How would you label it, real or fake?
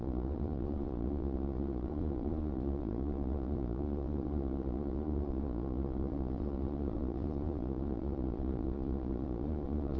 fake